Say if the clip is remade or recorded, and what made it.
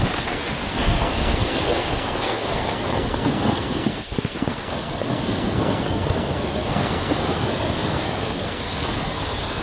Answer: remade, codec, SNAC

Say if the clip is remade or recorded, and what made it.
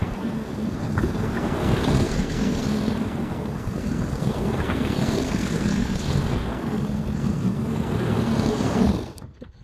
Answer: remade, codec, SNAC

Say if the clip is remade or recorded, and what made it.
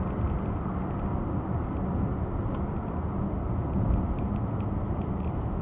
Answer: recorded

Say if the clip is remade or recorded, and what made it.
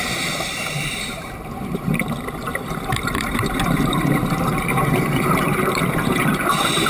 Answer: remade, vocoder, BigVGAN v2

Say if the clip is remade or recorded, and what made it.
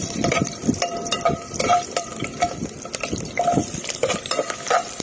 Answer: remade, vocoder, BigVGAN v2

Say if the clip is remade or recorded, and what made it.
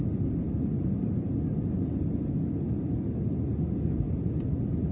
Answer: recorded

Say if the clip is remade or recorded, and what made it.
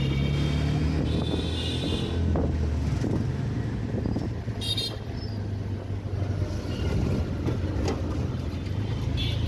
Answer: recorded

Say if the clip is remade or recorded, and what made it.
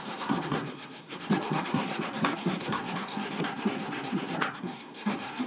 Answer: remade, codec, SNAC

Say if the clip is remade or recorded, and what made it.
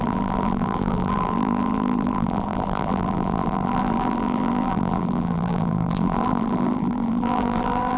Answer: remade, vocoder, BigVGAN v2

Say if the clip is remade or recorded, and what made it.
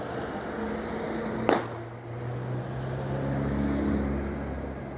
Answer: recorded